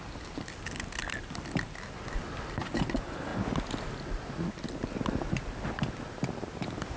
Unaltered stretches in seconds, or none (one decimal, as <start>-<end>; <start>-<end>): 0.0-7.0